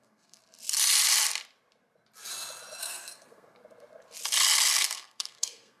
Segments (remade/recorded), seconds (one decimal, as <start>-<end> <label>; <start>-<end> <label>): 0.0-0.4 remade; 0.4-2.8 recorded; 2.8-3.6 remade; 3.6-4.8 recorded; 4.8-5.8 remade